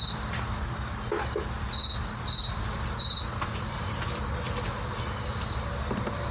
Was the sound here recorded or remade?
recorded